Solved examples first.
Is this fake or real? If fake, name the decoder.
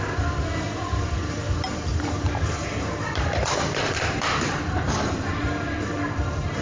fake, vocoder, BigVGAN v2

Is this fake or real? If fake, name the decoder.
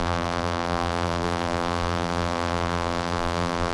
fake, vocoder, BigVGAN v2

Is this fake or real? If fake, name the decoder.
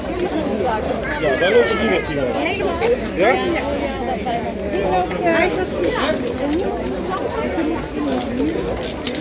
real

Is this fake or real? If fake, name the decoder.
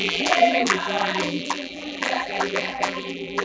fake, vocoder, BigVGAN v2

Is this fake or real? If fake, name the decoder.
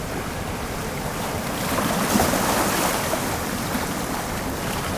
fake, vocoder, BigVGAN v2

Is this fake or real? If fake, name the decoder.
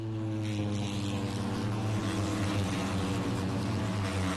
real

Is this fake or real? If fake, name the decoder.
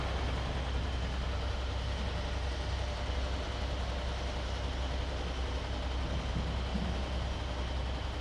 real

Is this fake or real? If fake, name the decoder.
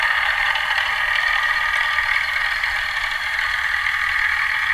real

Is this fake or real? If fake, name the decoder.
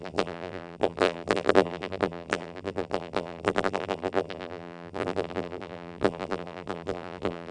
fake, vocoder, BigVGAN v2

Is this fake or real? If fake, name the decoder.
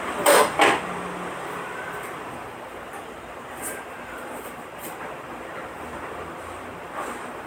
fake, vocoder, BigVGAN v2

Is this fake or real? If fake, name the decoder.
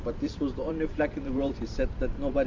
fake, vocoder, BigVGAN v2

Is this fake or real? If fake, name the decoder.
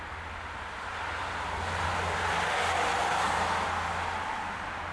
real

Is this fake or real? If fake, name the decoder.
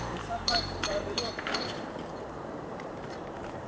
fake, vocoder, BigVGAN v2